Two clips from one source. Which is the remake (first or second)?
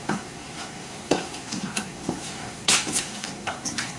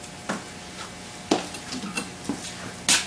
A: first